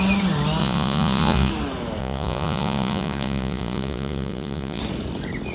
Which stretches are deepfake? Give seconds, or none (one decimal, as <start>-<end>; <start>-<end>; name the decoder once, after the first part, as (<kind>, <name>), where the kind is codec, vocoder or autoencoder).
0.6-1.5 (vocoder, Vocos); 2.0-4.8